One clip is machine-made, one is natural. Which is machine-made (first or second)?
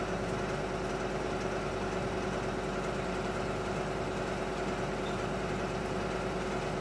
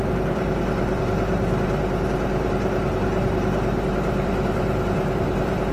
second